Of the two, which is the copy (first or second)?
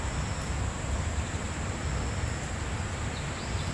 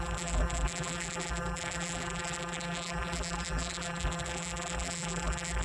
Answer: second